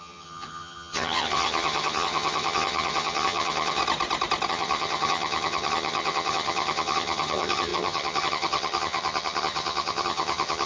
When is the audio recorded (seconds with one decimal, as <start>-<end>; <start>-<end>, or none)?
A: 3.8-4.5